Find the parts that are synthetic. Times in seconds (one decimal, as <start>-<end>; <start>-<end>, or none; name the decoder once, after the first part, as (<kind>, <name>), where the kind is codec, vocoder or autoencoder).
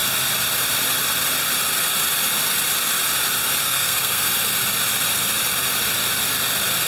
3.6-4.3 (codec, SNAC)